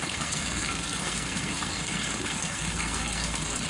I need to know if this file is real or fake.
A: fake